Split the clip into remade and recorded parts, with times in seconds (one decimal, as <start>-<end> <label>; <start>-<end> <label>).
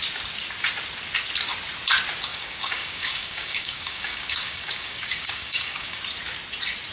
0.0-2.3 recorded; 2.3-6.0 remade; 6.0-6.9 recorded